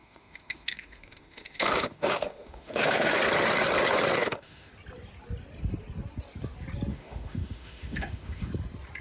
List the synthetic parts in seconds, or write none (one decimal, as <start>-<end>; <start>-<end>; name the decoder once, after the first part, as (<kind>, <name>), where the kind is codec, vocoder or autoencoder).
0.0-3.2 (autoencoder, DAC-VAE); 4.2-4.7; 6.9-8.5